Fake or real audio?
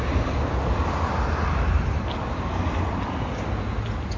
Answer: real